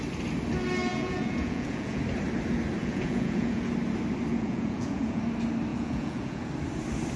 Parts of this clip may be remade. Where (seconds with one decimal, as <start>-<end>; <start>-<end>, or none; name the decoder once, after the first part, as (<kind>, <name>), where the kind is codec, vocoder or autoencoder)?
0.9-2.0 (vocoder, Vocos); 2.8-3.7; 4.3-5.2; 5.7-6.5